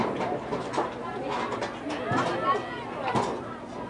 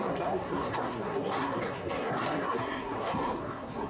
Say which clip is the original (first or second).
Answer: first